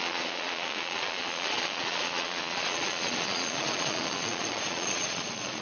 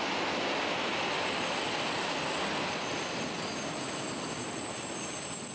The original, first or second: second